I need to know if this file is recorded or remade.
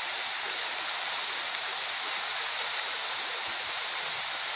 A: recorded